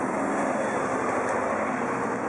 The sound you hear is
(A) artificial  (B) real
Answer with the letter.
B